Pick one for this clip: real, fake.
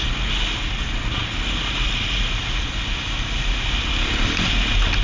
real